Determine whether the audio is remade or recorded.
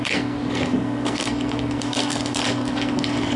remade